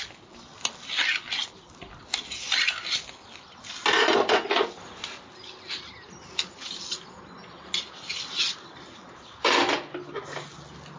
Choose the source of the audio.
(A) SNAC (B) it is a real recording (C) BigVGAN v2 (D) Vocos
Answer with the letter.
B